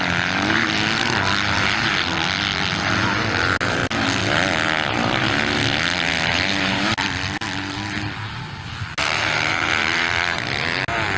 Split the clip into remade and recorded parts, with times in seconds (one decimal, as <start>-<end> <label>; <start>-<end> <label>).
0.0-11.2 recorded